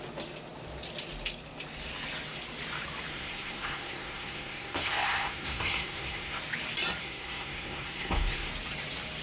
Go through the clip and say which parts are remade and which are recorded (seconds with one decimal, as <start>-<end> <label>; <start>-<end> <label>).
0.0-3.1 recorded; 3.1-6.4 remade; 6.4-7.0 recorded; 7.0-8.5 remade; 8.5-9.2 recorded